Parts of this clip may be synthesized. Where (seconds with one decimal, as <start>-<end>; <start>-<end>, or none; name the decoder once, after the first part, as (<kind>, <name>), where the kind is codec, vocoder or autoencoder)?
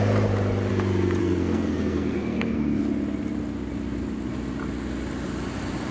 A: 1.2-2.8 (codec, SNAC)